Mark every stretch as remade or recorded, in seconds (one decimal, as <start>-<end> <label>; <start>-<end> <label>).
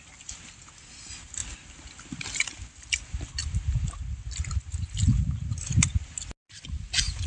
0.0-7.3 recorded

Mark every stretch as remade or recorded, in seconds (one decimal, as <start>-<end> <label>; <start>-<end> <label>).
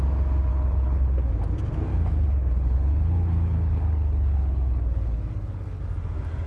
0.0-0.5 recorded; 0.5-1.3 remade; 1.3-1.9 recorded; 1.9-5.8 remade; 5.8-6.5 recorded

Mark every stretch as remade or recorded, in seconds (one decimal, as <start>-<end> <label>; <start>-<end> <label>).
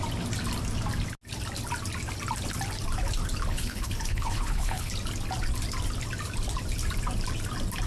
0.0-3.5 recorded; 3.5-4.9 remade; 4.9-7.9 recorded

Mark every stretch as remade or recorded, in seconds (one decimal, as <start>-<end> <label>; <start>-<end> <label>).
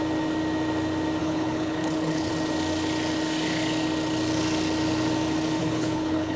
0.0-1.2 recorded; 1.2-2.3 remade; 2.3-5.6 recorded; 5.6-6.4 remade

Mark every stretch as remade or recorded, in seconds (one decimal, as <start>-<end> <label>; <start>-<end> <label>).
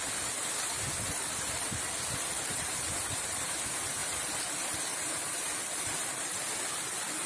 0.0-7.3 recorded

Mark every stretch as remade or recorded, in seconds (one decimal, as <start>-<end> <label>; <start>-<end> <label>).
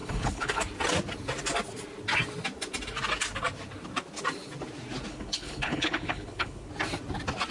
0.0-0.6 remade; 0.6-5.1 recorded; 5.1-6.7 remade; 6.7-7.5 recorded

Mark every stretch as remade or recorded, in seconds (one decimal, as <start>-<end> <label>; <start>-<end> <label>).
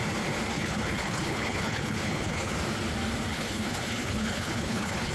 0.0-0.5 recorded; 0.5-2.5 remade; 2.5-3.3 recorded; 3.3-5.1 remade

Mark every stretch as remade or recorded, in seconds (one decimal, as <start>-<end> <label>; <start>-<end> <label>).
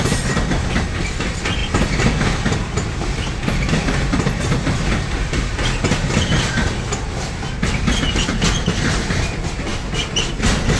0.0-10.8 recorded